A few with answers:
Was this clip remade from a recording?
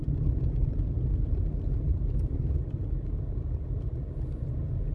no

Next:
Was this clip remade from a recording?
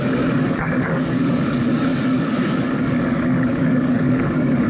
yes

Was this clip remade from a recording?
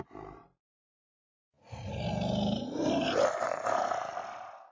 no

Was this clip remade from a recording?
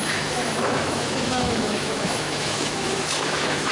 yes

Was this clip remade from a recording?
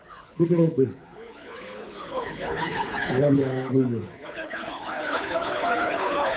yes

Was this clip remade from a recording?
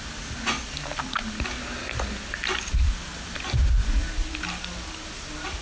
no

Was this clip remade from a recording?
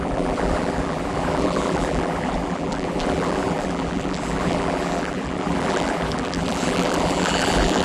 yes